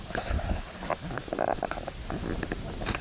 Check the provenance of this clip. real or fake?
real